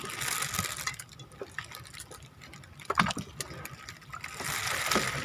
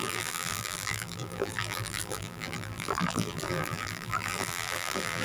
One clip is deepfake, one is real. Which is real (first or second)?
first